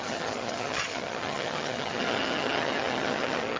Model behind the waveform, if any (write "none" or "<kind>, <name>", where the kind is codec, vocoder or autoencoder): vocoder, HiFi-GAN